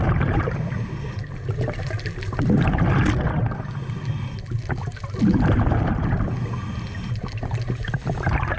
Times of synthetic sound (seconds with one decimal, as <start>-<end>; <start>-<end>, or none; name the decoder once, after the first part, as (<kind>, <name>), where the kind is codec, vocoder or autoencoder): 0.0-1.1 (vocoder, BigVGAN v2)